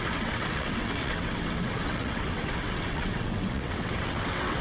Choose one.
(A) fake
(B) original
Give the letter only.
A